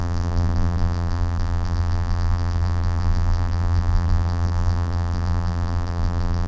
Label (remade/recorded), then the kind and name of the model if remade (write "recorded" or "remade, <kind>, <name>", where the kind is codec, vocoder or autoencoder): remade, vocoder, BigVGAN v2